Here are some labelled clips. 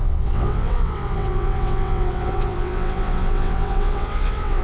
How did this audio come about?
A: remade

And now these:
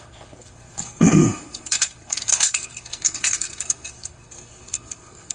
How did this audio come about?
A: remade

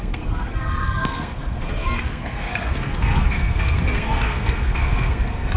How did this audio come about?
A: remade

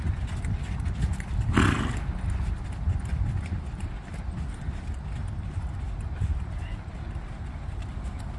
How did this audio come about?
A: recorded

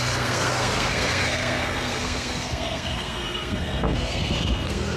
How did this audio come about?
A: remade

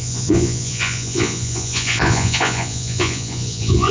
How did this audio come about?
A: remade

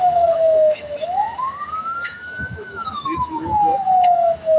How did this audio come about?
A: remade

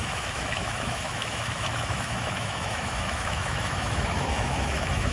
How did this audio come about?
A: remade